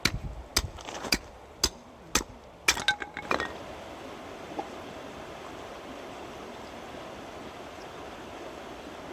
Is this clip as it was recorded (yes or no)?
yes